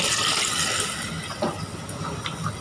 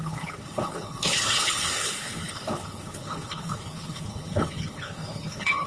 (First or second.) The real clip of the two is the first